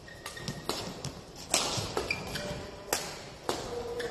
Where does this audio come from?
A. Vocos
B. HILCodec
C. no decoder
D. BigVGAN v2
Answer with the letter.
C